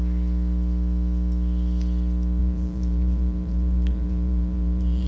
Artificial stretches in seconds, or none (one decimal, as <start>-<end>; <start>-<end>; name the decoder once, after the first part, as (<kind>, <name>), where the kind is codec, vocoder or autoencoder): 2.4-5.1 (vocoder, BigVGAN v2)